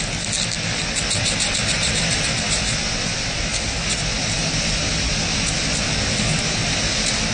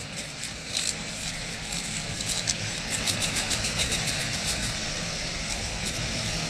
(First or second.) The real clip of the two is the first